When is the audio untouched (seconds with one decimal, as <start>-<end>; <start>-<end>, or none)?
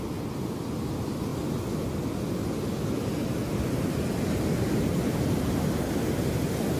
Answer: 0.0-6.8